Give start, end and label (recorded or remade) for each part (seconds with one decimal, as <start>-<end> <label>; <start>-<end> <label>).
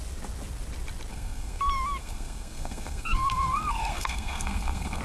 0.0-1.1 recorded; 1.1-1.6 remade; 1.6-2.0 recorded; 2.0-5.0 remade